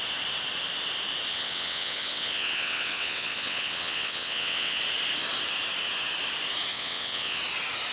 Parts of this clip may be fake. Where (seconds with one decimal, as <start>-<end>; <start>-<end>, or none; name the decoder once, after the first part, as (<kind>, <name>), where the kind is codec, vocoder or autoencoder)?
1.3-4.8 (vocoder, WaveNeXt); 6.7-7.4

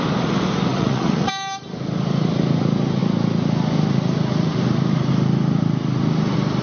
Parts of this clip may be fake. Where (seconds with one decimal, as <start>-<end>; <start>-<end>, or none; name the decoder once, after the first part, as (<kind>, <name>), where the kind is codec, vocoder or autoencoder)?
0.7-1.3 (vocoder, Vocos)

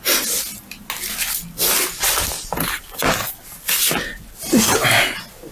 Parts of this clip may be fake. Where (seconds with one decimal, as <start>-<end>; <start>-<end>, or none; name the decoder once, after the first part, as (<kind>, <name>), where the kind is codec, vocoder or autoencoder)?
none

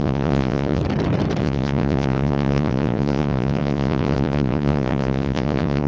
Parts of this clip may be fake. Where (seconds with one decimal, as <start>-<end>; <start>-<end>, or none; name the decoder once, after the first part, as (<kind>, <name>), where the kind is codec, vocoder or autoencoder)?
0.0-0.8 (vocoder, Vocos); 1.4-5.9

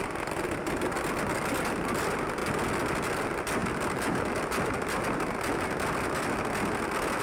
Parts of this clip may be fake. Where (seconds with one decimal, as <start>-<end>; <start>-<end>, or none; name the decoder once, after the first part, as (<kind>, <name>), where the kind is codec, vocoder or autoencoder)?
none